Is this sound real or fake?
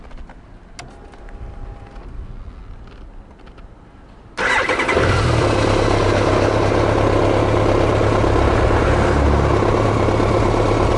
real